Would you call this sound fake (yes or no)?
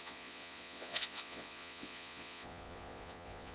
yes